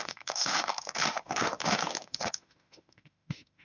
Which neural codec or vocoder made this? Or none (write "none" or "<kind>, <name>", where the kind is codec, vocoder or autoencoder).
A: autoencoder, DAC-VAE